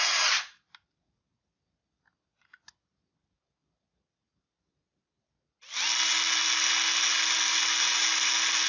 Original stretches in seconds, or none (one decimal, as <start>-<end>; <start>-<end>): 0.0-8.7

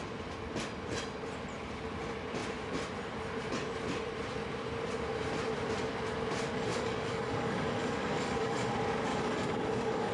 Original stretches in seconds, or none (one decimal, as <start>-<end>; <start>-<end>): 0.0-6.7; 8.7-9.1

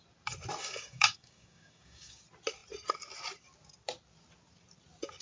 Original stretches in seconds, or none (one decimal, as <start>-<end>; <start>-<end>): 0.0-0.6; 2.2-5.2

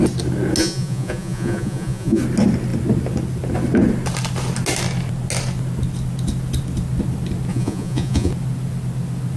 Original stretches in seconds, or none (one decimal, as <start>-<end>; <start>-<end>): 0.0-0.6; 2.2-7.5; 8.3-9.4

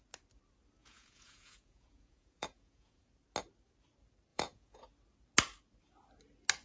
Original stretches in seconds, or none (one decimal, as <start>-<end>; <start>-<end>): 0.0-0.8; 3.1-4.3; 4.8-6.6

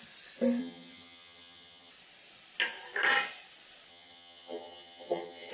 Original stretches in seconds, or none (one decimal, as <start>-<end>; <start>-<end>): 0.0-0.6; 1.9-3.9